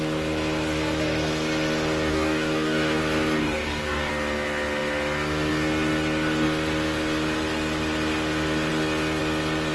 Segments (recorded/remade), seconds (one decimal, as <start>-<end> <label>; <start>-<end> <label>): 0.0-2.1 recorded; 2.1-3.0 remade; 3.0-3.4 recorded; 3.4-4.1 remade; 4.1-9.7 recorded